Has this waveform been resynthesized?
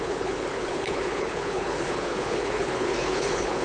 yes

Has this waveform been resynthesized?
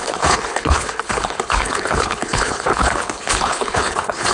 yes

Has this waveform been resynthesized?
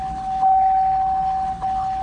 yes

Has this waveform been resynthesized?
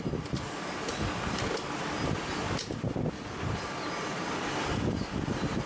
no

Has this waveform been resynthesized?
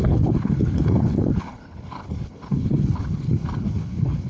yes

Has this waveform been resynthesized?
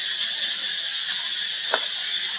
no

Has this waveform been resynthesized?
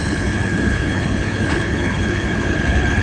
yes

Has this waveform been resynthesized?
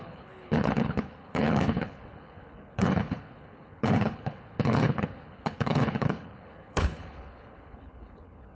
yes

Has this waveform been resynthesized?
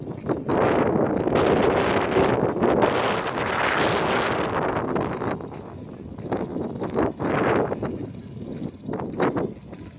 no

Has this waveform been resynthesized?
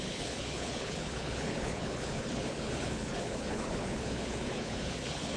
yes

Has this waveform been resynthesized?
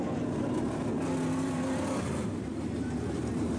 no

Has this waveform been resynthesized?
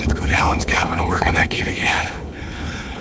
yes